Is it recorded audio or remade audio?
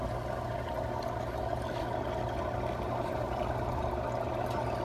recorded